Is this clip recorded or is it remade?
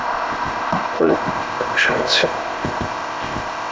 remade